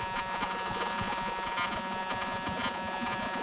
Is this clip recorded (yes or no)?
no